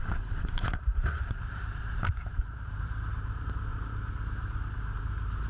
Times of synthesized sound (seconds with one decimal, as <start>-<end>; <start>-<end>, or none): 0.0-3.7; 5.0-5.5